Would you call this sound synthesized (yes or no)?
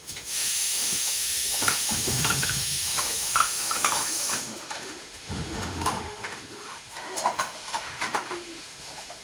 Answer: yes